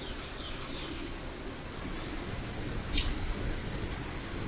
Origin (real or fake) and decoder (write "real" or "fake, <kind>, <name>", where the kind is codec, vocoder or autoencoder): real